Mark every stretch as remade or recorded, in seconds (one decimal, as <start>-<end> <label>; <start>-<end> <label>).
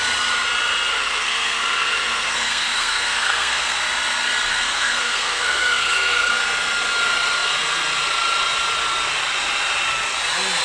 0.0-0.9 recorded; 0.9-3.8 remade; 3.8-4.5 recorded; 4.5-6.3 remade; 6.3-10.6 recorded